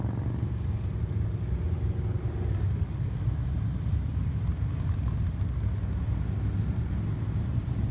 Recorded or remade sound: recorded